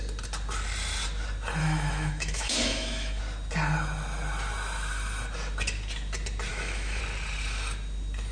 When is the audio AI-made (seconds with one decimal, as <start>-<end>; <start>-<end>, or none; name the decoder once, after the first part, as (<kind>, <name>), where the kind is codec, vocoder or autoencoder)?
1.6-3.2 (autoencoder, DAC-VAE); 6.5-7.0